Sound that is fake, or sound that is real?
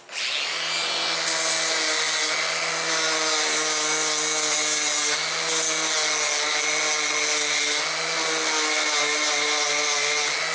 real